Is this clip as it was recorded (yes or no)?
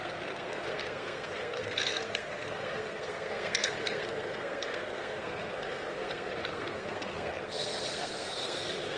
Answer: no